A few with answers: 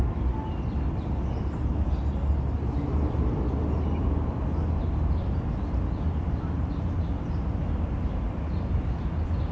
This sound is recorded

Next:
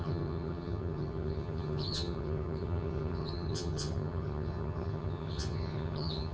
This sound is remade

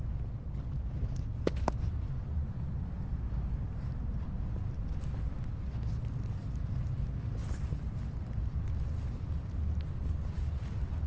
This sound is recorded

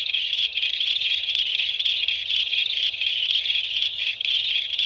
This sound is remade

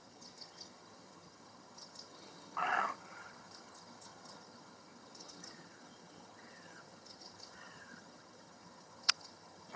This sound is remade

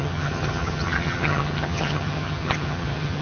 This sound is remade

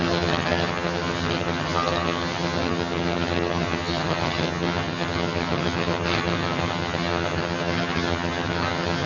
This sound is remade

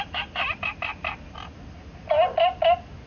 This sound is recorded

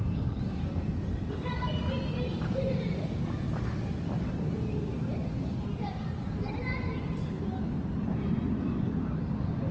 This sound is recorded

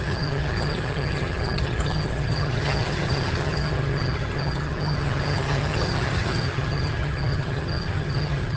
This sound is remade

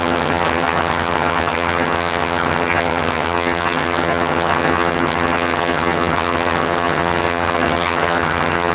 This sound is remade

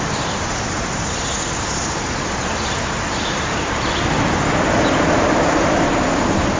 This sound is recorded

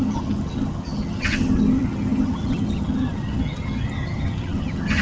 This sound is remade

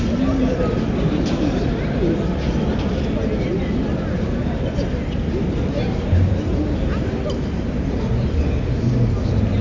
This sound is recorded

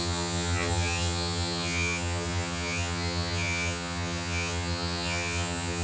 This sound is remade